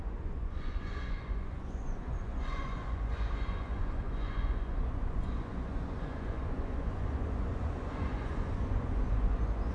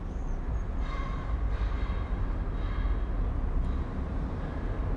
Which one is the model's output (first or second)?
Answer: first